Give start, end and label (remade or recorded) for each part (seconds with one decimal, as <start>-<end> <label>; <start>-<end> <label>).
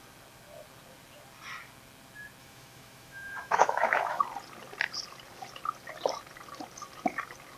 0.0-2.4 recorded; 2.4-4.2 remade; 4.2-7.6 recorded